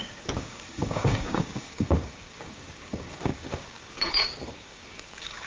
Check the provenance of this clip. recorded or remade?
remade